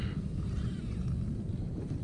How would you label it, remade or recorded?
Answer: recorded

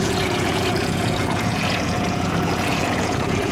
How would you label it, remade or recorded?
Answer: remade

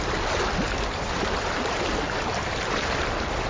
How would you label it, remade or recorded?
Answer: remade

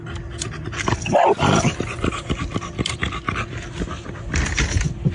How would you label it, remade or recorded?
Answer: recorded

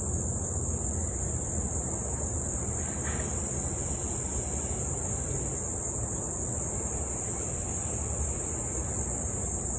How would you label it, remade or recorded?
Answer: recorded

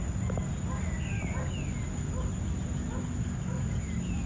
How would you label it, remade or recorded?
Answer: recorded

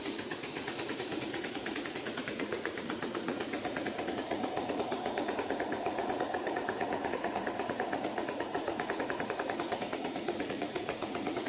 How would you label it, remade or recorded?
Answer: remade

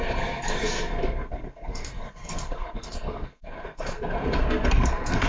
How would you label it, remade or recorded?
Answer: remade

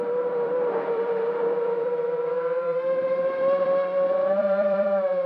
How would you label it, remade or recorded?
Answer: remade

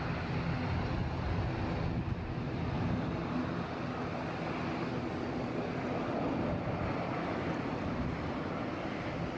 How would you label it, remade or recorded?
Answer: recorded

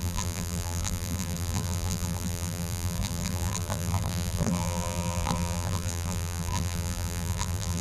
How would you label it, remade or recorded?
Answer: remade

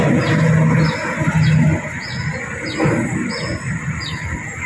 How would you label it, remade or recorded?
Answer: recorded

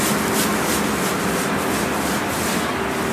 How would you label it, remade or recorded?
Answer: recorded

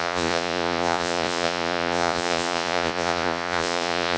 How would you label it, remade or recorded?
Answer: remade